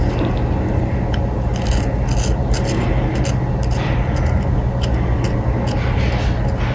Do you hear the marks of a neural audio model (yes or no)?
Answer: no